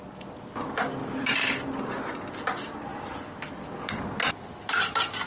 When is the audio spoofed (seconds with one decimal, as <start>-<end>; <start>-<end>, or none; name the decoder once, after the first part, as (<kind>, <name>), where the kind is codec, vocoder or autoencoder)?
1.0-1.9 (vocoder, BigVGAN v2)